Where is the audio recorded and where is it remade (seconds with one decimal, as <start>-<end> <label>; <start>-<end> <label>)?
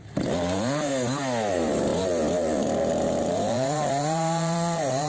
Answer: 0.0-0.9 remade; 0.9-1.5 recorded; 1.5-5.1 remade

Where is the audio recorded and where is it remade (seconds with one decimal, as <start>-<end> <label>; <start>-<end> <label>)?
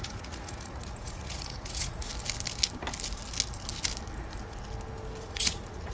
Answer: 0.0-2.1 remade; 2.1-5.2 recorded; 5.2-5.9 remade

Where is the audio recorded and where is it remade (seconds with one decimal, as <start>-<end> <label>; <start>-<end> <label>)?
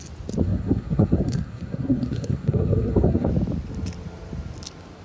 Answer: 0.0-0.4 recorded; 0.4-3.3 remade; 3.3-5.0 recorded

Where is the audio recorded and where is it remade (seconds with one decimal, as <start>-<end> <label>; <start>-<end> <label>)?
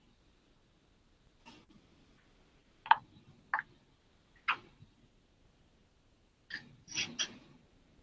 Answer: 0.0-8.0 recorded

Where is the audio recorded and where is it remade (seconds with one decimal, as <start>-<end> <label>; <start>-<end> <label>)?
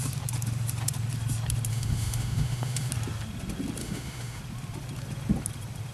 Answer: 0.0-1.7 recorded; 1.7-2.9 remade; 2.9-3.8 recorded; 3.8-4.4 remade; 4.4-5.9 recorded